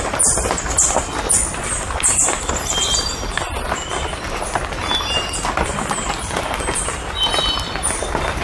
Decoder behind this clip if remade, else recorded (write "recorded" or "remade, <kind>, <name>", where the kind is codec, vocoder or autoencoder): recorded